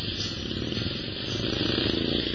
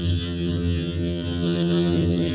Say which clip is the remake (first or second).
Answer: second